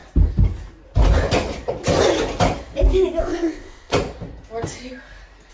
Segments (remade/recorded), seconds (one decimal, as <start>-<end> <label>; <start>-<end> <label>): 0.0-3.2 recorded; 3.2-3.9 remade; 3.9-5.5 recorded